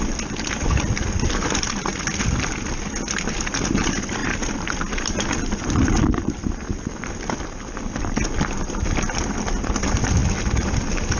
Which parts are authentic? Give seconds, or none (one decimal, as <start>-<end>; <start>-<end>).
0.0-4.2; 6.4-10.2